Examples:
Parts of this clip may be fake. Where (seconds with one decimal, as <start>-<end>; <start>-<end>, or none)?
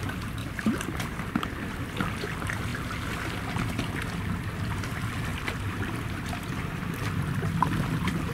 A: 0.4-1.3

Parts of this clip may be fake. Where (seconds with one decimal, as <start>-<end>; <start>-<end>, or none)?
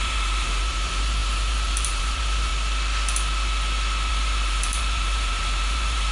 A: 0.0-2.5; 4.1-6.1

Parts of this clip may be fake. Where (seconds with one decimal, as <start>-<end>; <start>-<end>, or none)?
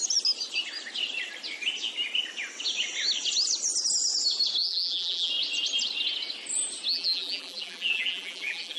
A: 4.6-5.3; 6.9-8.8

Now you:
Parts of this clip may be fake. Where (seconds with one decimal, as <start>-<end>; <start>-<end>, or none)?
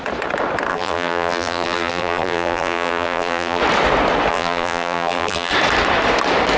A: 0.7-3.6; 4.3-5.5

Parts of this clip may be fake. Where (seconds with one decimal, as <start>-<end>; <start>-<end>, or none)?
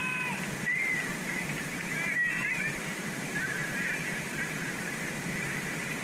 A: 0.0-6.0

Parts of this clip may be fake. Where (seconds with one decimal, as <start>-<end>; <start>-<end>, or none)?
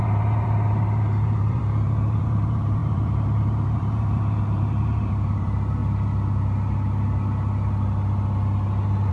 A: 0.0-5.8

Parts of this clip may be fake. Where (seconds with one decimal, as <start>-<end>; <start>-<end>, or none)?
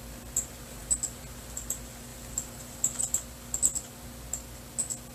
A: 2.1-3.0